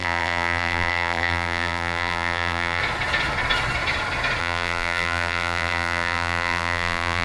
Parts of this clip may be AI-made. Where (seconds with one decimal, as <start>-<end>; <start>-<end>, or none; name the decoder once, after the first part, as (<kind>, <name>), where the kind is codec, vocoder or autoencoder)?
0.0-2.8 (vocoder, BigVGAN v2); 4.4-7.2